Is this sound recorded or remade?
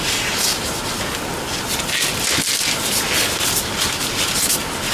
recorded